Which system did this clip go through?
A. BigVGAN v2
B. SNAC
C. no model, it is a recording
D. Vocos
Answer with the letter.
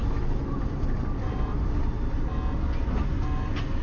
C